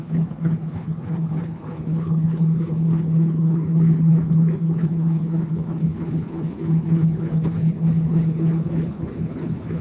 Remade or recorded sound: remade